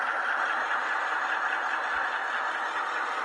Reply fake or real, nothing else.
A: real